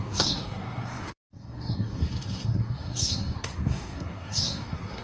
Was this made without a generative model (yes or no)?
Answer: no